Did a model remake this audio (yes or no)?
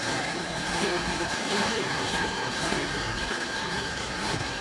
yes